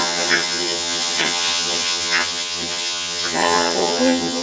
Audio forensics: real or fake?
fake